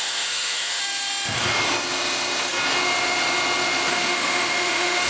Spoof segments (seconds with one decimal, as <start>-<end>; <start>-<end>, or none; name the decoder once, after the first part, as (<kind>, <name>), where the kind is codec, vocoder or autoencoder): 0.0-0.8 (autoencoder, DAC-VAE); 3.9-5.1